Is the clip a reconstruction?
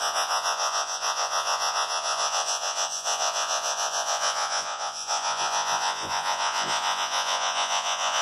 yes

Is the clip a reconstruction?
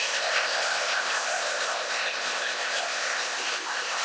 yes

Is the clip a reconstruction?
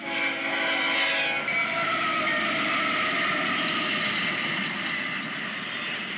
no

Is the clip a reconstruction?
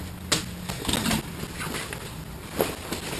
no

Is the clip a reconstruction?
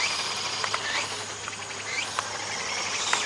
no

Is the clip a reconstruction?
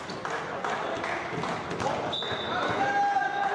no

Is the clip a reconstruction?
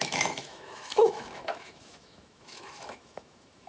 yes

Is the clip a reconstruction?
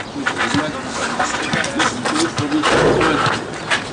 no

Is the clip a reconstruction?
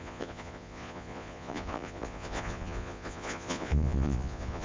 yes